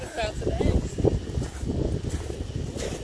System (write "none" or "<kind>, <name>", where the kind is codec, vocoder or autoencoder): none